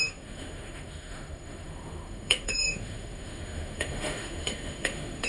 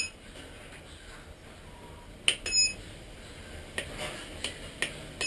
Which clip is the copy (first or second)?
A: first